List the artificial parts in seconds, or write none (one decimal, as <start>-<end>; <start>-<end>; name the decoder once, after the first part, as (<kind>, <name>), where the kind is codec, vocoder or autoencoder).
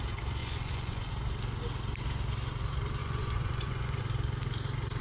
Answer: 0.4-1.1 (vocoder, Vocos); 3.0-4.0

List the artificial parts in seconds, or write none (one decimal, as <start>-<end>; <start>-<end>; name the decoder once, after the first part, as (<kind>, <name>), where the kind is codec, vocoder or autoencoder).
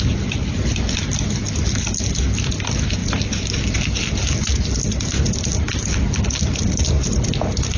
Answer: none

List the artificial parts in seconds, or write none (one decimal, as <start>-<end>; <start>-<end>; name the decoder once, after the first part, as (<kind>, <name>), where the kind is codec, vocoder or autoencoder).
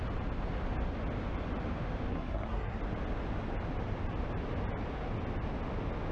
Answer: 2.1-2.8 (codec, SNAC)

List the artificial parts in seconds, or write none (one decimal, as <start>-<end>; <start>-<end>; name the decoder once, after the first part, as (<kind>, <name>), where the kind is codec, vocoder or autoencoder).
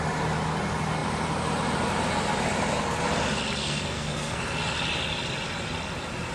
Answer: 3.6-4.4 (codec, SNAC)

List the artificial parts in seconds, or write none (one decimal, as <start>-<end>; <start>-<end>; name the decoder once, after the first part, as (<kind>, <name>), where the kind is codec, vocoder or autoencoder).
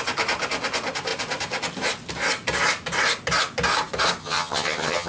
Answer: 4.2-5.1 (vocoder, HiFi-GAN)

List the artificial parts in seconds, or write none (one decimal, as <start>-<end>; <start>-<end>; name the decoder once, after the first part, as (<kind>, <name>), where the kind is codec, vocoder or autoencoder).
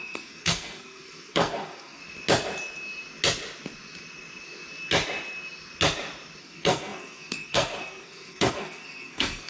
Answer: 0.0-2.0 (codec, SNAC); 6.4-9.5